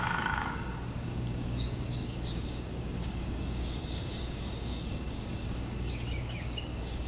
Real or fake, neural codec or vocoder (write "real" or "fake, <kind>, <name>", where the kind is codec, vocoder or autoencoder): fake, codec, DAC